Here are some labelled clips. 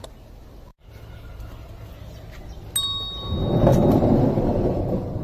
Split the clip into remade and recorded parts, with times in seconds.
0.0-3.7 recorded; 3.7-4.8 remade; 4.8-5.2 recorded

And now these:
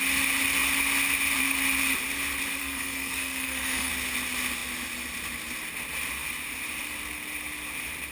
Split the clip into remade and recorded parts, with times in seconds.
0.0-2.6 recorded; 2.6-3.9 remade; 3.9-8.1 recorded

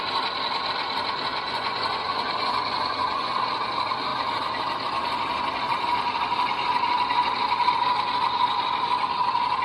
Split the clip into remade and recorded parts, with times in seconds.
0.0-1.3 recorded; 1.3-3.3 remade; 3.3-9.6 recorded

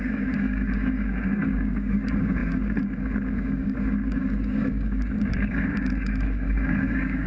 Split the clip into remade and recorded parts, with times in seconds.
0.0-7.3 remade